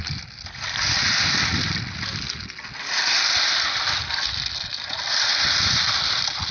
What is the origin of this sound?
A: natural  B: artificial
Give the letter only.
A